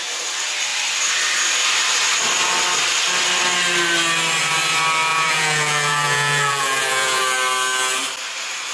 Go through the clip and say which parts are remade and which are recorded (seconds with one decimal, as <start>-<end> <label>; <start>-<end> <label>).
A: 0.0-5.1 recorded; 5.1-7.2 remade; 7.2-8.7 recorded